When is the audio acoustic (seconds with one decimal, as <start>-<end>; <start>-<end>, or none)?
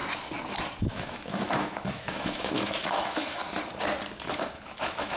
0.0-0.9; 3.4-4.3